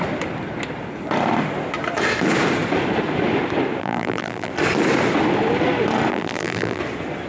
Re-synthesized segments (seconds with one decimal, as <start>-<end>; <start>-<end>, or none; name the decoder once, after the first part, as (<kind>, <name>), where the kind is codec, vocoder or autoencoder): 3.8-4.5 (vocoder, BigVGAN v2); 6.1-6.8